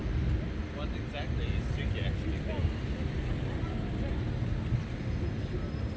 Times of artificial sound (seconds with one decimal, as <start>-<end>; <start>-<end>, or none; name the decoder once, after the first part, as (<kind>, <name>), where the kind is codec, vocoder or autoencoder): none